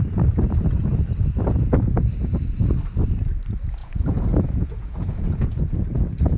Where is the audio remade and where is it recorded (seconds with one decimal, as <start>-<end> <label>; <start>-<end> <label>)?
0.0-3.8 recorded; 3.8-5.5 remade; 5.5-6.4 recorded